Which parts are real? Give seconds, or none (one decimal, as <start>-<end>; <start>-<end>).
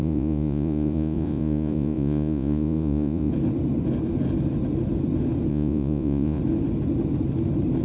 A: 3.3-5.5; 6.4-7.8